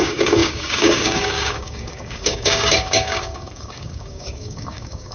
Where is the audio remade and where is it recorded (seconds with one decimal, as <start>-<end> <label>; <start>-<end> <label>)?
0.0-5.1 remade